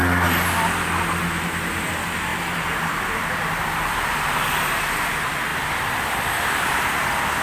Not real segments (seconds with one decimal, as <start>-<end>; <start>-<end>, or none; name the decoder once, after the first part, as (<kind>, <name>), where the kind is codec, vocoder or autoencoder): 5.5-6.7 (vocoder, BigVGAN v2)